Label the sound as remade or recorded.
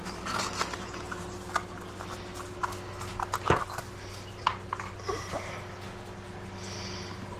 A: recorded